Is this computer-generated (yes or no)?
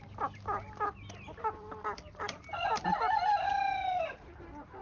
no